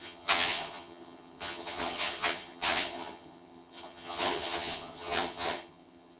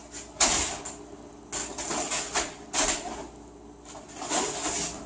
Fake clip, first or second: first